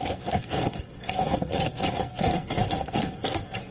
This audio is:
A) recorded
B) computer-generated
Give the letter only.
B